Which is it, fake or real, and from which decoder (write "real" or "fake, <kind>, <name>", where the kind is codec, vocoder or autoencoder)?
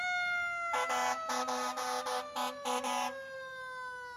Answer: real